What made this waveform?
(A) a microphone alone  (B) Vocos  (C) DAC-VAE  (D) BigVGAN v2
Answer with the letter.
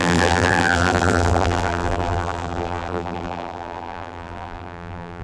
D